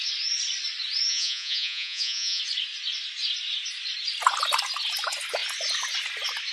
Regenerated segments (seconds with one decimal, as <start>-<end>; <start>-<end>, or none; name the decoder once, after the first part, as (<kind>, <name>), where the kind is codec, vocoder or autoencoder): 1.1-2.4 (vocoder, Vocos)